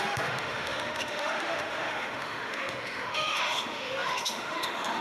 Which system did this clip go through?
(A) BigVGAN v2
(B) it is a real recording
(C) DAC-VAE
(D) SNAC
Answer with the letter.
C